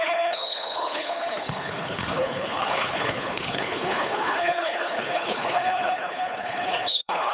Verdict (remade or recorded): remade